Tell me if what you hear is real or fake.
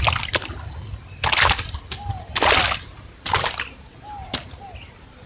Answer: real